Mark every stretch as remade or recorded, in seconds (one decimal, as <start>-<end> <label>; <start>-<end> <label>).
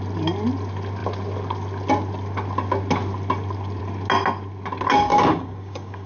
0.0-5.1 recorded; 5.1-6.1 remade